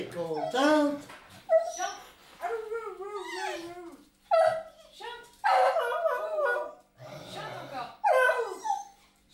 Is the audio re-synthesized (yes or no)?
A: no